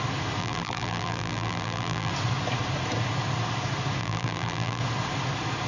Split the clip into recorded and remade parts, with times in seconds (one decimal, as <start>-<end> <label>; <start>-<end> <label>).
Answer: 0.0-0.4 recorded; 0.4-2.1 remade; 2.1-4.0 recorded; 4.0-4.8 remade; 4.8-5.7 recorded